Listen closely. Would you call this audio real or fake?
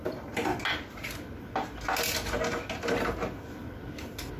real